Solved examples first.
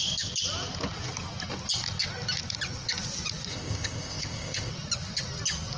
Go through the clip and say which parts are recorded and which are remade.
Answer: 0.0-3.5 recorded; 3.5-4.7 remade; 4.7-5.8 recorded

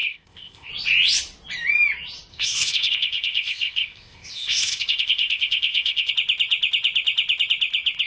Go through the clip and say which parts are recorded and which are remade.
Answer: 0.0-0.7 remade; 0.7-2.3 recorded; 2.3-6.1 remade; 6.1-8.1 recorded

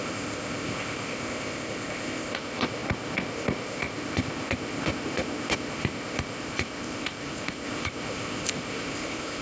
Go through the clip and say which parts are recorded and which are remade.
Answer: 0.0-9.4 remade

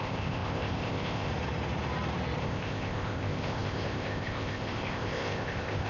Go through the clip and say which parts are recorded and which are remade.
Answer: 0.0-1.3 remade; 1.3-2.4 recorded; 2.4-5.9 remade

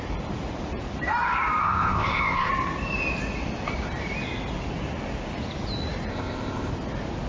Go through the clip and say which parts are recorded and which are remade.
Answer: 0.0-1.6 recorded; 1.6-2.5 remade; 2.5-6.1 recorded; 6.1-6.7 remade; 6.7-7.3 recorded

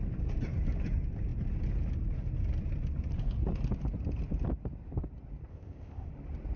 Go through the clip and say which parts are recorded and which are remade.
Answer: 0.0-5.5 recorded; 5.5-6.1 remade; 6.1-6.6 recorded

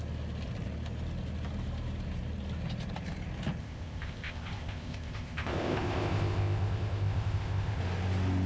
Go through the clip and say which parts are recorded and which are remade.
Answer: 0.0-3.6 recorded; 3.6-7.8 remade; 7.8-8.5 recorded